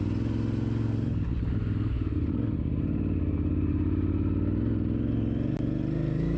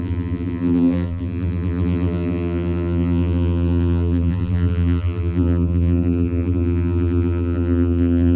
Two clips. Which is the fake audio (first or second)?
second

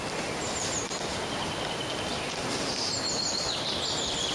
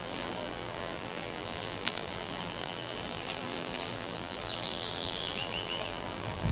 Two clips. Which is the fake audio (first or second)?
second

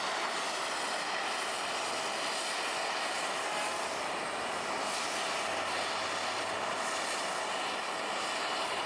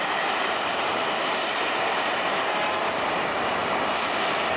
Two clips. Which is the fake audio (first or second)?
second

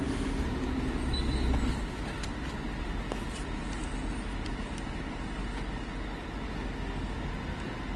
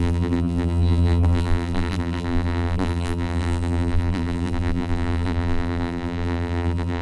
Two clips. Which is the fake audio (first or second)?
second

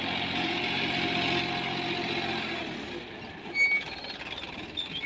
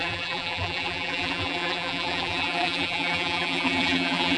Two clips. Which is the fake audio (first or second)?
second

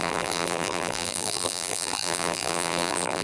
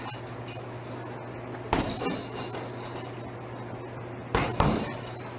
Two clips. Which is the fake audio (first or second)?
first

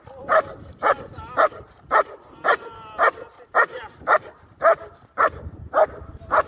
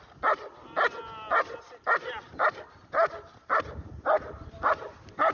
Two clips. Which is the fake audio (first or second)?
first